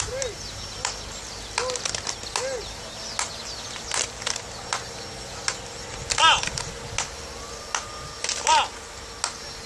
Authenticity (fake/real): real